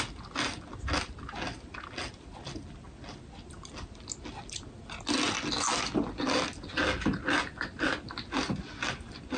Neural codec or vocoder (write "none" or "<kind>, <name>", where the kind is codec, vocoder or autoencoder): none